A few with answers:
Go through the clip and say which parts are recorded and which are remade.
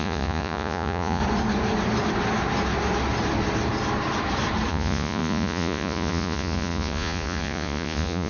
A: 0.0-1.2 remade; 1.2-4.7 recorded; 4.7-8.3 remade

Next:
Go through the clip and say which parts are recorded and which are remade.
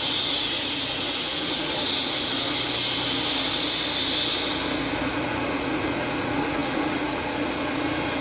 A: 0.0-2.3 remade; 2.3-5.0 recorded; 5.0-8.2 remade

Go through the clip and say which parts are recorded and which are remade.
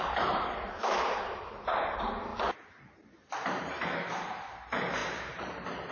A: 0.0-2.3 remade; 2.3-3.6 recorded; 3.6-5.9 remade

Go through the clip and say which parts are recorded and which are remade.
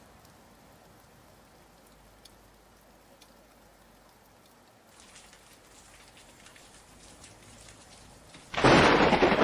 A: 0.0-6.2 recorded; 6.2-9.4 remade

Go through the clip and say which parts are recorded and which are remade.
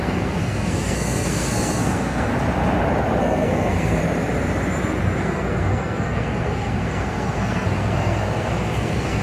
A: 0.0-2.3 remade; 2.3-3.2 recorded; 3.2-4.0 remade; 4.0-5.2 recorded; 5.2-9.2 remade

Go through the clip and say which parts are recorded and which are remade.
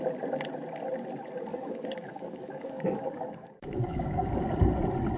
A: 0.0-1.5 recorded; 1.5-4.4 remade; 4.4-5.2 recorded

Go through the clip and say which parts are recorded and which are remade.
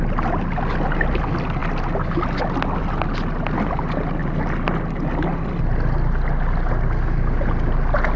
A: 0.0-8.2 recorded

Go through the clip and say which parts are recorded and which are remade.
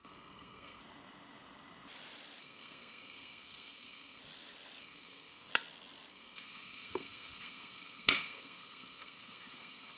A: 0.0-0.8 remade; 0.8-2.4 recorded; 2.4-4.2 remade; 4.2-4.8 recorded; 4.8-5.5 remade; 5.5-6.1 recorded; 6.1-10.0 remade